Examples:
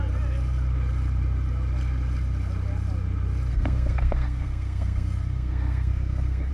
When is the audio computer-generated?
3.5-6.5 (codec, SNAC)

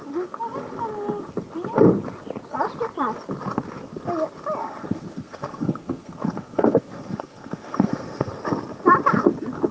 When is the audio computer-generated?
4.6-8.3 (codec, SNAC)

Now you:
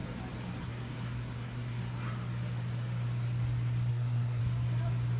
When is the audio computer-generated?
0.6-1.8 (codec, SNAC); 3.9-4.4

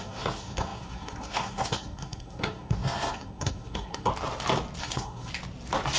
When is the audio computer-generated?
0.0-4.1 (codec, SNAC); 4.8-5.3

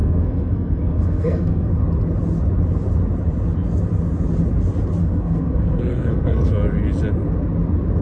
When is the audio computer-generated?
0.0-1.7 (codec, SNAC); 5.0-6.5

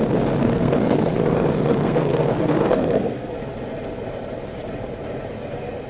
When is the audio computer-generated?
0.4-3.3 (codec, SNAC)

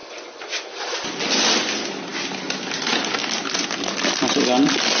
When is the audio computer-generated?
none